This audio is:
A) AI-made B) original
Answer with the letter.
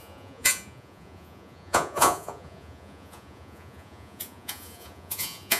A